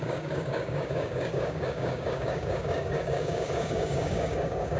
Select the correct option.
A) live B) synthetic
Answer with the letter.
B